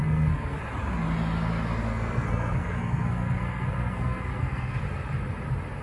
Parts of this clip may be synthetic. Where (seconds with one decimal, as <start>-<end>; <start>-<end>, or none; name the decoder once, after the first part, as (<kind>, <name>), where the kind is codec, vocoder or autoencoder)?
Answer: 0.0-0.6 (codec, SNAC); 1.9-4.8